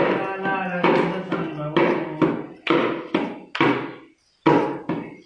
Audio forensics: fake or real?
real